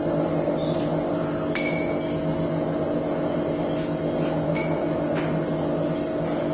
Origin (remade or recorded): recorded